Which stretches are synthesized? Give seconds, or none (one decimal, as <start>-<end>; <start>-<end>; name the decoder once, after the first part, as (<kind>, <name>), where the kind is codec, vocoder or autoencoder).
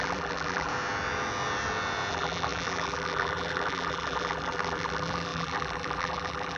0.0-0.7 (vocoder, BigVGAN v2); 2.1-6.6